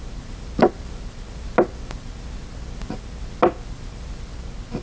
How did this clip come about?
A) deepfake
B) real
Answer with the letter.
B